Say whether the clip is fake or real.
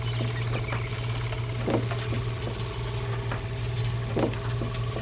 real